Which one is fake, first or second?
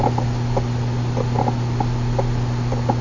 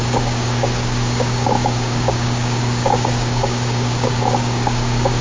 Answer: second